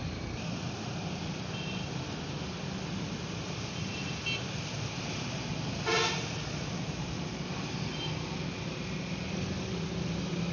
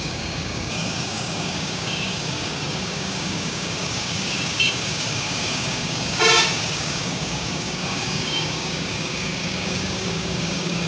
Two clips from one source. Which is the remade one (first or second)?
second